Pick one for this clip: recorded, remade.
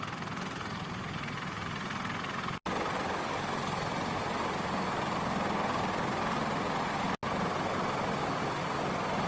recorded